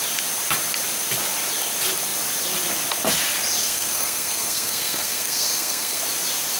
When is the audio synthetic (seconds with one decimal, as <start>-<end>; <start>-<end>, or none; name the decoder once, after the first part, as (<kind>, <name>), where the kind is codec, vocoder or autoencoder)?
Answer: 3.6-6.0 (codec, SNAC)